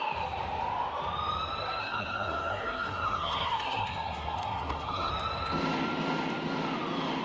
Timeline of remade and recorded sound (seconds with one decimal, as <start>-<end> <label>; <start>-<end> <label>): 0.0-1.8 recorded; 1.8-5.1 remade; 5.1-7.2 recorded